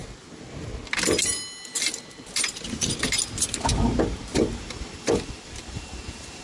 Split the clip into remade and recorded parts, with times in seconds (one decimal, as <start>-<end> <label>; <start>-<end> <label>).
0.0-1.7 recorded; 1.7-4.3 remade; 4.3-5.2 recorded; 5.2-6.4 remade